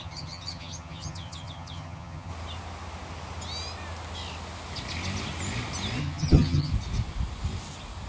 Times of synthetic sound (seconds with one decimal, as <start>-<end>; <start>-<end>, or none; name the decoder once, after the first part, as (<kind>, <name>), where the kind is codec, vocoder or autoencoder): 0.0-2.3 (vocoder, HiFi-GAN); 6.0-6.7